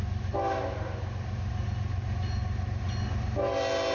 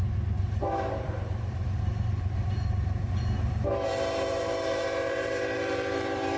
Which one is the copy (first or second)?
second